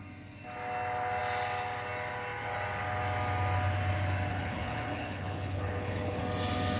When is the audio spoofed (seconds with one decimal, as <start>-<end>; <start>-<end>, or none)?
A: 4.3-6.2